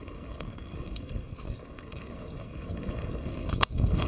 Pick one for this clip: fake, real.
fake